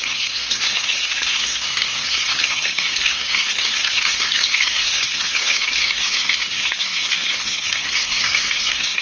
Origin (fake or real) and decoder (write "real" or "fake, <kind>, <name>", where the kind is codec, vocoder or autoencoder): fake, codec, SNAC